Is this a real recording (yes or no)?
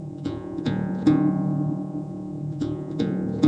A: no